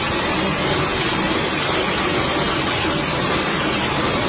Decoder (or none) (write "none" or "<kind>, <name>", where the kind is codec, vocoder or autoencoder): none